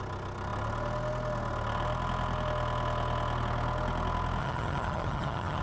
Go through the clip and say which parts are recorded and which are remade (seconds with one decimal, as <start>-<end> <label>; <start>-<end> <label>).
0.0-4.4 recorded; 4.4-5.6 remade